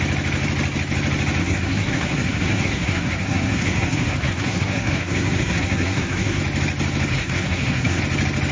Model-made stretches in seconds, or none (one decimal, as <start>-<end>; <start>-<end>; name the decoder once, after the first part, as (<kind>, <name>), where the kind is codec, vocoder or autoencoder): 1.4-6.4 (codec, SNAC); 7.1-8.0